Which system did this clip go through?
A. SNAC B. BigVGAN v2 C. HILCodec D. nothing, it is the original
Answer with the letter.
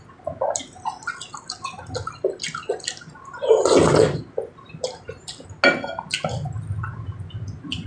D